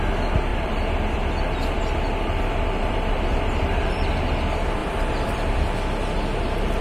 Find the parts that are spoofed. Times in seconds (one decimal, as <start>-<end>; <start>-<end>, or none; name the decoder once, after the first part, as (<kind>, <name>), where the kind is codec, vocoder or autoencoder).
0.5-1.9 (vocoder, BigVGAN v2); 2.8-4.1; 4.8-5.6